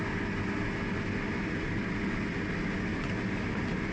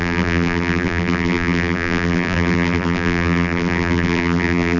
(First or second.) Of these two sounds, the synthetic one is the second